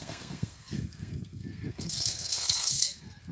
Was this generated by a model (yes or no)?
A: yes